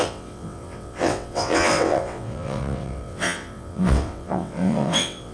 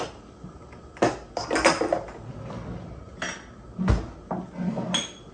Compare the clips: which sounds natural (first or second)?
second